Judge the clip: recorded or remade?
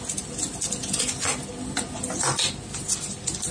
recorded